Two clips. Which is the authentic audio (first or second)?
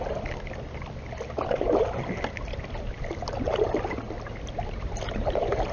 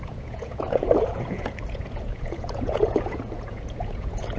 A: first